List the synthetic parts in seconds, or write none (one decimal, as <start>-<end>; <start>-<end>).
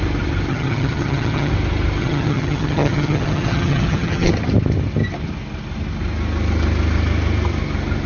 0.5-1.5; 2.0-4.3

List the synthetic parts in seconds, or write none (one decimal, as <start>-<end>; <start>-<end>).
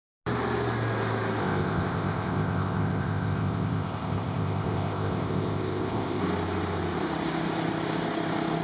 1.4-6.2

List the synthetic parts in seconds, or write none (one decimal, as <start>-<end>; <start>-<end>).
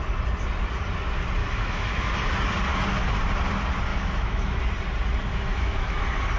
1.4-2.1; 3.9-4.6; 5.3-6.0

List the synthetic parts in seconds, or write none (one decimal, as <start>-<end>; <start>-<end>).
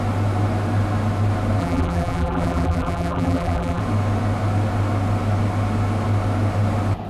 1.6-3.8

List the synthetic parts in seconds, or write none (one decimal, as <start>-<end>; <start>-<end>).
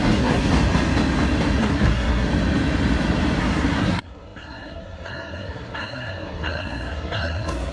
0.0-0.5; 1.6-2.3; 3.4-7.7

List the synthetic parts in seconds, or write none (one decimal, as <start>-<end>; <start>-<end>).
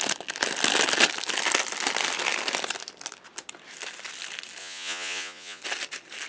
4.6-5.6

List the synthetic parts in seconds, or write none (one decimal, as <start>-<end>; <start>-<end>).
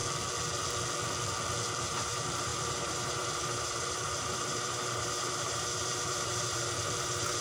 1.8-7.4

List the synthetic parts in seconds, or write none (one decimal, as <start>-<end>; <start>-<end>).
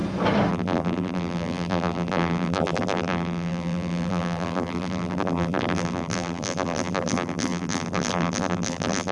0.5-9.1